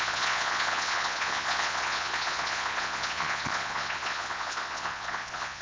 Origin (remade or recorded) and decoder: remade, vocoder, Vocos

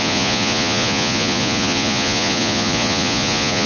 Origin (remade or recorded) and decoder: remade, vocoder, Vocos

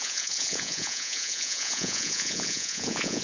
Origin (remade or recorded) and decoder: remade, vocoder, Vocos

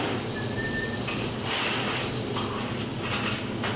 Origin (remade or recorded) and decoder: recorded